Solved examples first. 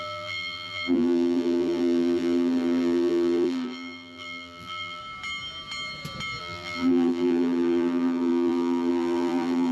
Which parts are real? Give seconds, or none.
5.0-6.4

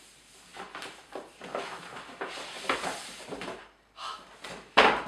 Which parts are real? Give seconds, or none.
0.0-0.5; 3.6-5.1

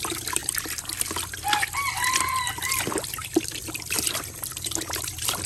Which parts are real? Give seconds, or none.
0.0-4.5; 5.1-5.5

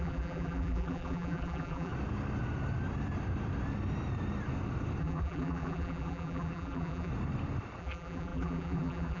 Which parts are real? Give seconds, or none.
1.9-5.0; 7.1-7.8

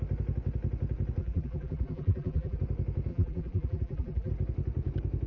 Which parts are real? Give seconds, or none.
0.0-1.2; 2.6-3.1; 4.3-5.3